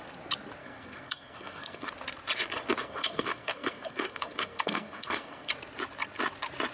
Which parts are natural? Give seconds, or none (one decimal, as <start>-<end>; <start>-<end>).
0.0-0.6; 1.9-2.8; 5.5-6.7